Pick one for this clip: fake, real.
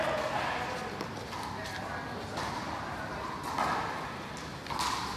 real